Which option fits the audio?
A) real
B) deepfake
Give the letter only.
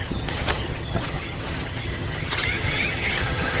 B